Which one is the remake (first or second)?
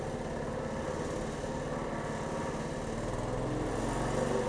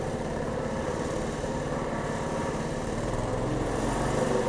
second